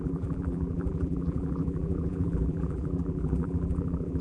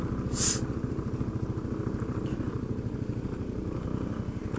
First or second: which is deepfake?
first